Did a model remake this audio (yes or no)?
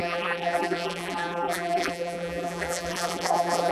yes